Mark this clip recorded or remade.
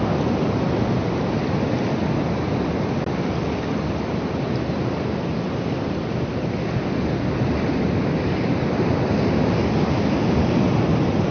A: recorded